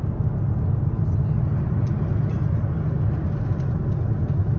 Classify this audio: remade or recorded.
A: recorded